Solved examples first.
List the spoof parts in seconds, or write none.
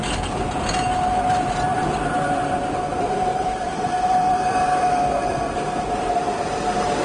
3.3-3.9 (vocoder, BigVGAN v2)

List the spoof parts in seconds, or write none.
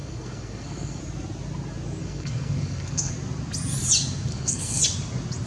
0.0-1.0 (codec, SNAC); 2.0-3.1; 4.3-4.8